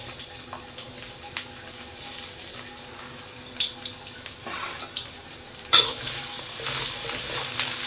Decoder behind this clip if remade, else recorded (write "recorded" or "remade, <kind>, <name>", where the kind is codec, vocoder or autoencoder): recorded